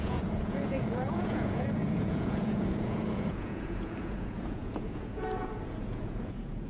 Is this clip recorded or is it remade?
remade